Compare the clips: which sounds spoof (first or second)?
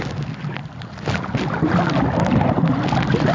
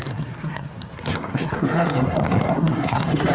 second